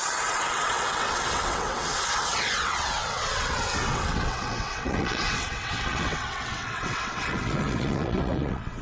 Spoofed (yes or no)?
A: yes